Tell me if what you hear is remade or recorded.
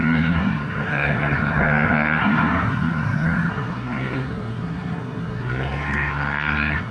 remade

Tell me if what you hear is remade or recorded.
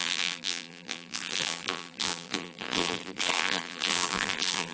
remade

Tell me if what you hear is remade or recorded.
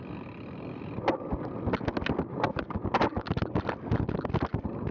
recorded